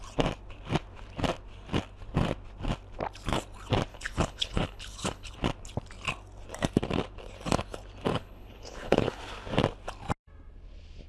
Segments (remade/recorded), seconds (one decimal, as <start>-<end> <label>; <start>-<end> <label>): 0.0-3.9 recorded; 3.9-5.3 remade; 5.3-8.1 recorded; 8.1-9.2 remade; 9.2-11.1 recorded